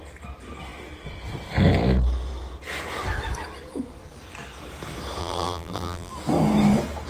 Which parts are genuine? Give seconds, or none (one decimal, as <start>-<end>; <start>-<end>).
0.0-5.2; 6.1-7.1